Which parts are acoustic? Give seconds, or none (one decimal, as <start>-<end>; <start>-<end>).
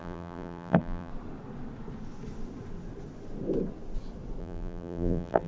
1.1-4.4